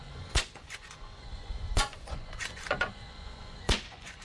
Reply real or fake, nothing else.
fake